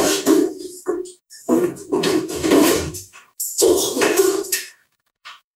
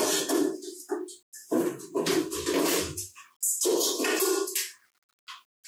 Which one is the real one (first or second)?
second